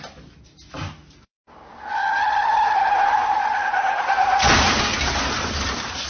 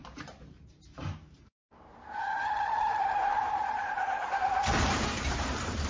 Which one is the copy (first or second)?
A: second